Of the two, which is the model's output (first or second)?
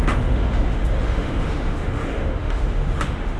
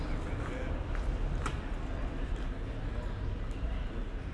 first